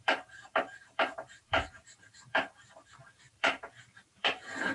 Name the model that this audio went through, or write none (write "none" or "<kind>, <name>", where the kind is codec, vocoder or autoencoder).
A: vocoder, BigVGAN v2